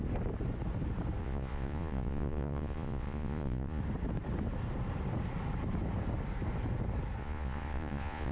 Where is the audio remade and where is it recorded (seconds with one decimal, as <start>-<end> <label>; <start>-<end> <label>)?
0.0-1.2 recorded; 1.2-3.8 remade; 3.8-7.2 recorded; 7.2-8.3 remade